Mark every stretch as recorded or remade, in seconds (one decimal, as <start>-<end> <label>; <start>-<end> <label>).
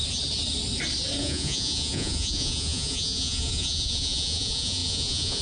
0.0-1.2 recorded; 1.2-5.4 remade